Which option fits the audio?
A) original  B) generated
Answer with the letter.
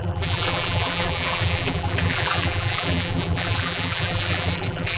B